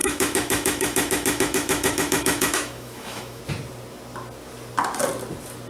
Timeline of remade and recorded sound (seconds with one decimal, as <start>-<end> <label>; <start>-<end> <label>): 0.0-3.4 remade; 3.4-5.7 recorded